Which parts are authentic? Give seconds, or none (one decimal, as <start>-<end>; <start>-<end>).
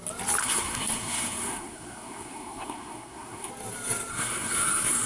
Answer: 0.0-0.4; 3.5-4.1